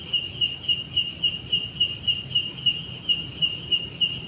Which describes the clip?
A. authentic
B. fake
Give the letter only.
A